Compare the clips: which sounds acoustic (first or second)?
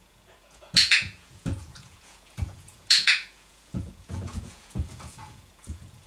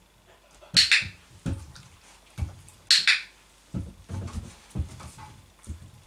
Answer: second